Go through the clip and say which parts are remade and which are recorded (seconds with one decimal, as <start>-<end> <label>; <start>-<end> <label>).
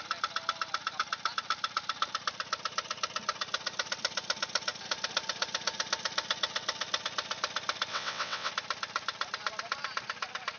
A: 0.0-7.9 recorded; 7.9-8.5 remade; 8.5-10.6 recorded